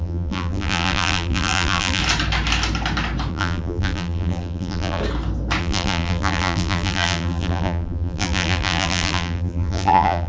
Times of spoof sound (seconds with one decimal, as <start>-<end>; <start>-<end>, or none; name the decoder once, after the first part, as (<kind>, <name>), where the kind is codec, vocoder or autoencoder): 0.0-2.0 (vocoder, BigVGAN v2); 3.3-5.0; 5.6-10.3